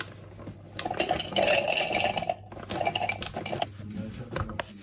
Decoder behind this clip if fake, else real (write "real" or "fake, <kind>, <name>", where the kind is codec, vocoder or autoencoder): real